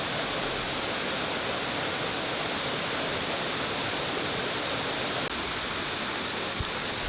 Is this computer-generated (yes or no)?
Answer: no